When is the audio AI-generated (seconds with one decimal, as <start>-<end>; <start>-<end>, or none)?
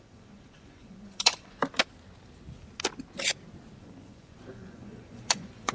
0.0-1.6; 3.8-5.7